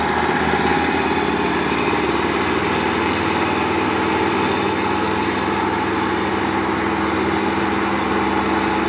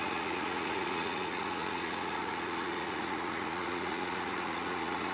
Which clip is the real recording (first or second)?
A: first